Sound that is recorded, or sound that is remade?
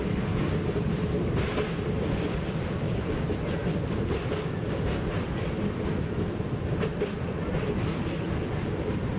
recorded